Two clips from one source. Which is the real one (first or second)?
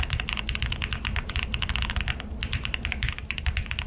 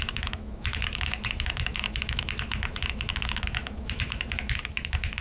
first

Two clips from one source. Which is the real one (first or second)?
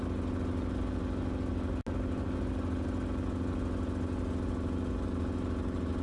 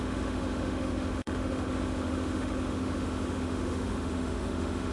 first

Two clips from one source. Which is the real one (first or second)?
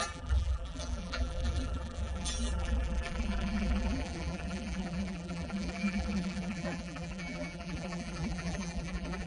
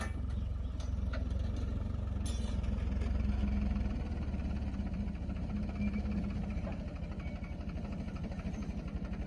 second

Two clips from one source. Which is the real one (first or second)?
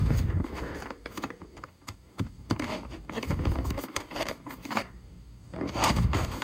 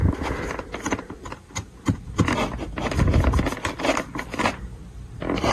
second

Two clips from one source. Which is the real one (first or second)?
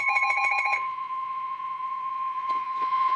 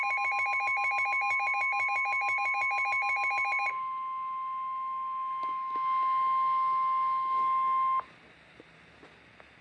second